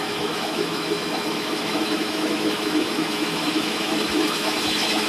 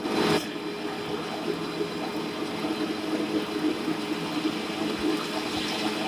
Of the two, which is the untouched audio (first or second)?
second